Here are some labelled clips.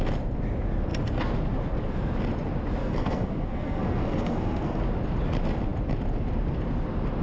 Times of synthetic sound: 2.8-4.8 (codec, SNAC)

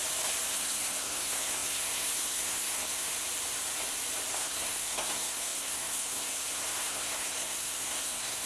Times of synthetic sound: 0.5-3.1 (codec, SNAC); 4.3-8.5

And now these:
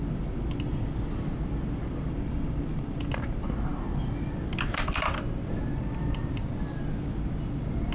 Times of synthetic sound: none

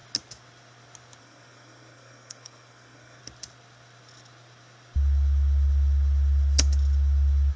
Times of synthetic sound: 1.2-3.2 (codec, SNAC)

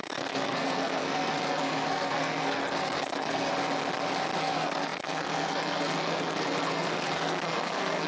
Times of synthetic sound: 0.0-3.5 (codec, SNAC); 4.4-8.1